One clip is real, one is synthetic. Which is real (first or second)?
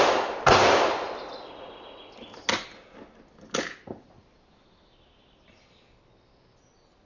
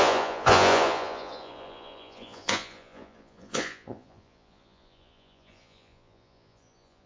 first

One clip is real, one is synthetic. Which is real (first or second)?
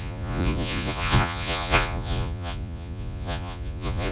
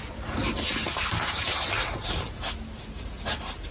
second